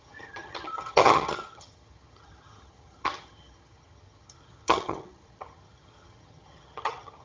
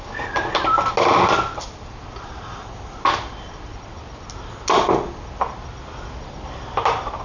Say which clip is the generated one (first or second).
first